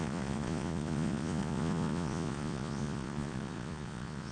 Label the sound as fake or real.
fake